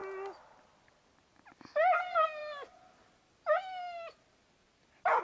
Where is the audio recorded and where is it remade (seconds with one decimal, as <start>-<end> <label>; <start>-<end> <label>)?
0.0-5.2 recorded